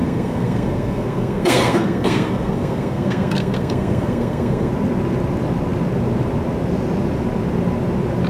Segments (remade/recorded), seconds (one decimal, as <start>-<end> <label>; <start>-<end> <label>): 0.0-4.7 remade; 4.7-8.3 recorded

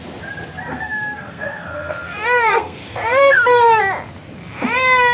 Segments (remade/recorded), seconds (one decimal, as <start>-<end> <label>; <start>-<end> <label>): 0.0-0.7 recorded; 0.7-3.8 remade; 3.8-5.1 recorded

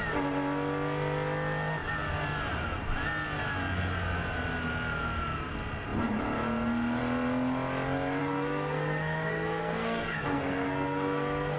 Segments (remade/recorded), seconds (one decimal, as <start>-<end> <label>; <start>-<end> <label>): 0.0-8.2 recorded; 8.2-11.6 remade

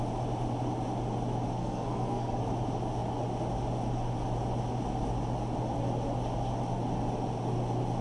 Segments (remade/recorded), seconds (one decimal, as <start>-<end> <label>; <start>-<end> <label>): 0.0-1.6 recorded; 1.6-2.4 remade; 2.4-8.0 recorded

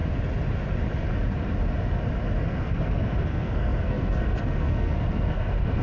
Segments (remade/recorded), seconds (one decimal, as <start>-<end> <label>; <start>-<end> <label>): 0.0-2.4 recorded; 2.4-5.8 remade

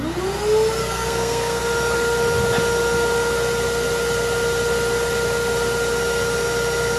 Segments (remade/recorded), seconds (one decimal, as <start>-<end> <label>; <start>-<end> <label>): 0.0-0.8 recorded; 0.8-1.6 remade; 1.6-7.0 recorded